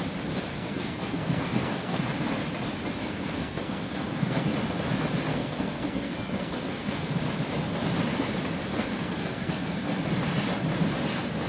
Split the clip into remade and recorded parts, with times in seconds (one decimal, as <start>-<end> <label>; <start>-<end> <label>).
0.0-0.5 recorded; 0.5-2.0 remade; 2.0-3.0 recorded; 3.0-4.5 remade; 4.5-5.3 recorded; 5.3-7.1 remade; 7.1-8.7 recorded; 8.7-10.0 remade; 10.0-11.5 recorded